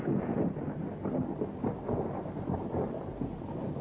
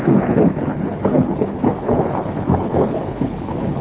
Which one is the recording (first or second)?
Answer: first